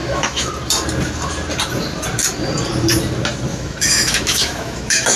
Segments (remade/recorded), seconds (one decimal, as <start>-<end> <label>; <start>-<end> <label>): 0.0-0.5 remade; 0.5-3.5 recorded; 3.5-5.2 remade